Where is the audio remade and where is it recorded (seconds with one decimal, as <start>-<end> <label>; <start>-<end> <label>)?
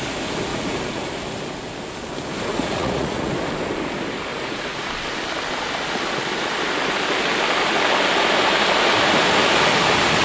0.0-0.5 recorded; 0.5-1.1 remade; 1.1-2.5 recorded; 2.5-3.3 remade; 3.3-4.3 recorded; 4.3-4.9 remade; 4.9-10.2 recorded